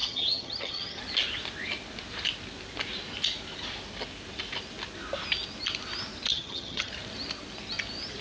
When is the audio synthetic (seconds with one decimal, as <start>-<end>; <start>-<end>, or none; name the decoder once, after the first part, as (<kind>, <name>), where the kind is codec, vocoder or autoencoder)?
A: 0.0-1.0 (vocoder, HiFi-GAN); 6.3-6.9